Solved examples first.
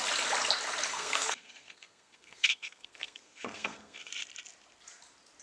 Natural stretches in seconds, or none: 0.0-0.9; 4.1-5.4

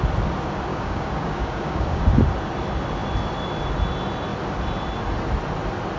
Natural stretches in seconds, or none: 0.0-0.7; 2.0-6.0

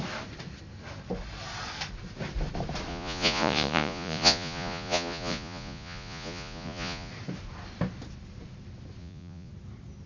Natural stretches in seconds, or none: 0.0-2.9; 7.1-9.0; 9.5-10.1

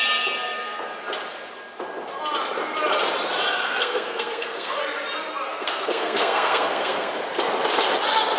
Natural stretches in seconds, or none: 0.0-3.8; 4.8-5.5; 7.1-8.4

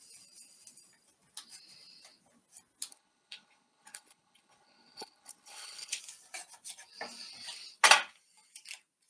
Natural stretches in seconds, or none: 0.0-2.9; 6.0-9.1

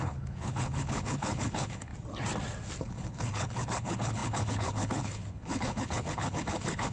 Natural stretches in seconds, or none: 1.9-2.8

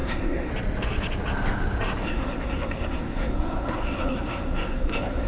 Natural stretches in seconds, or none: 0.5-2.0

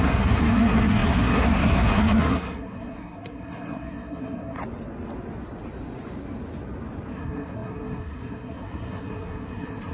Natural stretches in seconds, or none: 4.6-7.1